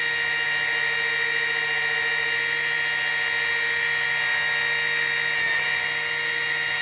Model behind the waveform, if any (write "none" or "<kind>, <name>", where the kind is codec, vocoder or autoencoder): none